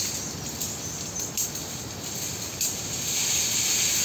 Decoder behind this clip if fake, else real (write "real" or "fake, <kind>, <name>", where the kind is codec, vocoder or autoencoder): real